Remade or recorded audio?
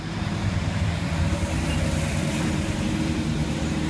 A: remade